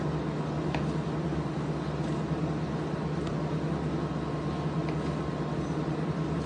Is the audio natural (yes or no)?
yes